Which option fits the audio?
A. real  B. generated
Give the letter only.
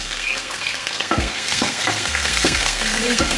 B